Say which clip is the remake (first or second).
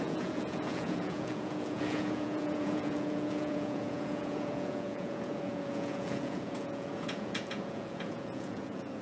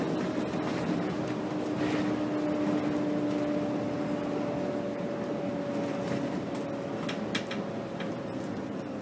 first